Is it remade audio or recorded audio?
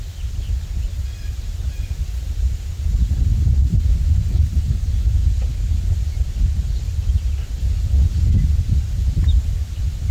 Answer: recorded